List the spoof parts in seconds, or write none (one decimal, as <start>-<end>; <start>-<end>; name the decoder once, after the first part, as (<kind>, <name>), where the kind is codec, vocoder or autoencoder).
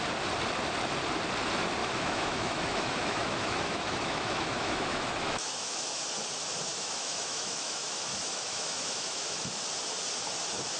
1.8-6.0 (autoencoder, DAC-VAE); 6.7-9.6